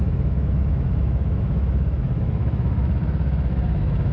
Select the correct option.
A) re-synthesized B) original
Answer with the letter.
A